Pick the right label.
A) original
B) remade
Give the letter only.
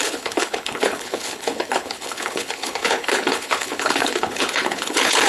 B